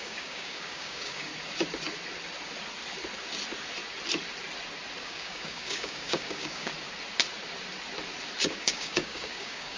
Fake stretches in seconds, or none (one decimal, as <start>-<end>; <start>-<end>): 0.0-1.3; 5.0-6.7; 8.5-9.8